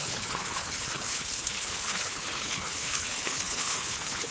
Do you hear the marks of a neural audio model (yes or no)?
yes